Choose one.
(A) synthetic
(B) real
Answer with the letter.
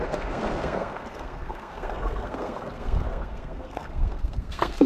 A